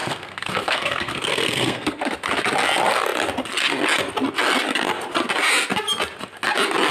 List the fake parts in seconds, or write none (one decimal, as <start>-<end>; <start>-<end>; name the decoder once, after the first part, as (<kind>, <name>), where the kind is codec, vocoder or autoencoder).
0.0-2.1 (codec, SNAC)

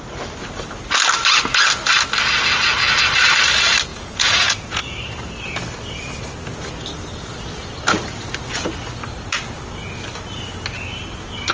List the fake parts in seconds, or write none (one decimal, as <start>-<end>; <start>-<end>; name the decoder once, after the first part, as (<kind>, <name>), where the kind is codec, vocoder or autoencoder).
3.9-4.8 (vocoder, Vocos)

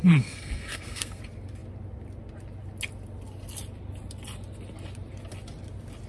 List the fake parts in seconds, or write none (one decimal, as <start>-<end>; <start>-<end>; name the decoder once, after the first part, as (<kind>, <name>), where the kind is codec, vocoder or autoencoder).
0.0-1.2 (codec, SNAC)

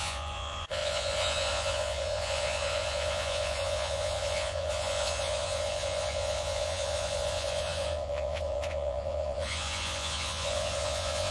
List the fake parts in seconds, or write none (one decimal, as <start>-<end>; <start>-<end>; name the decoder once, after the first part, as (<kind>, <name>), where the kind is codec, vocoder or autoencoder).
0.0-11.3 (vocoder, Vocos)

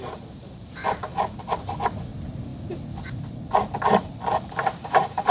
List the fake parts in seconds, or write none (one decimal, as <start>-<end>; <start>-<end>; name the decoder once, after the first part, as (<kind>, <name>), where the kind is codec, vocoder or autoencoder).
0.0-2.1 (vocoder, BigVGAN v2); 4.2-5.3